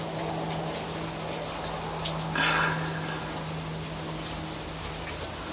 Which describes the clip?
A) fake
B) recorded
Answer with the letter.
B